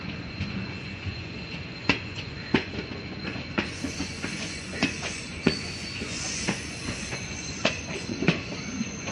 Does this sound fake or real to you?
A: fake